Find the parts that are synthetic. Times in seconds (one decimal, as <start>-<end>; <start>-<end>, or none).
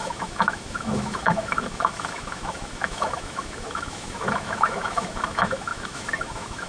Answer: 0.0-6.7